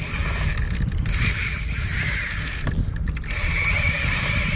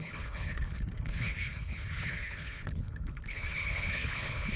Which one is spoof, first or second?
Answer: second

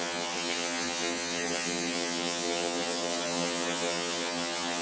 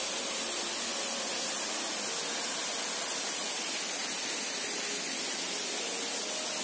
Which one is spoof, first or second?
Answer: first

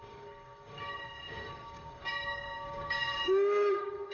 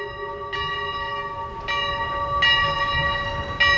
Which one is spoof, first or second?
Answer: first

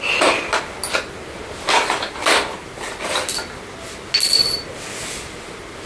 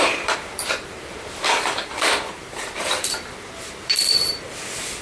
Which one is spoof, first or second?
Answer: second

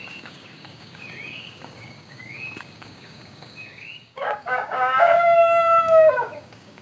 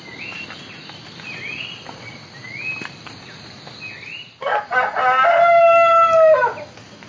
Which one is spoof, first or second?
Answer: first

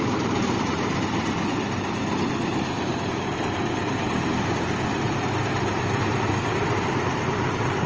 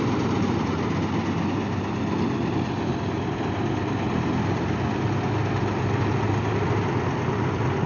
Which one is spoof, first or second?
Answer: first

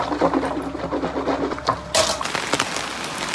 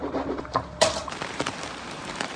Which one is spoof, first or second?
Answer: second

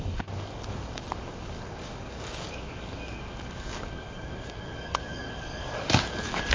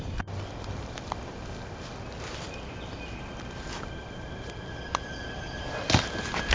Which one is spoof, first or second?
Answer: first